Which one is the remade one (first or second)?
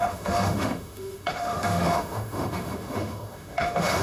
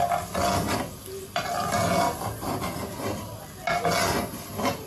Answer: first